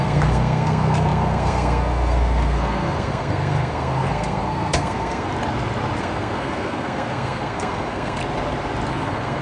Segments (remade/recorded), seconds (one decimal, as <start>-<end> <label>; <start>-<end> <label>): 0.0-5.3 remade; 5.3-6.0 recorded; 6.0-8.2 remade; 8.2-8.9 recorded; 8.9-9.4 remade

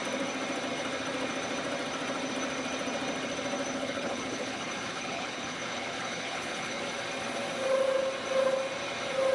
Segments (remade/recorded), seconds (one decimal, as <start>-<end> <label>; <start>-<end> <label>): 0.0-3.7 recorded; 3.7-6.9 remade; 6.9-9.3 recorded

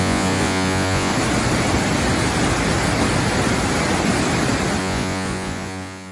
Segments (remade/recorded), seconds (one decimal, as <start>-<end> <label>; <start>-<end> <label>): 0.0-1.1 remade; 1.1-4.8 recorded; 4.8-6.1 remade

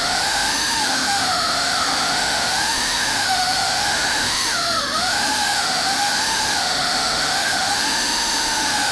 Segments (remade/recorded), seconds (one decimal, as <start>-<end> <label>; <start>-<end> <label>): 0.0-8.9 remade

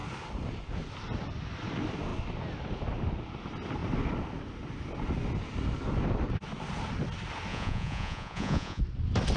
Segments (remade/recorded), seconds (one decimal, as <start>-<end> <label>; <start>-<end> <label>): 0.0-7.5 recorded; 7.5-8.8 remade; 8.8-9.4 recorded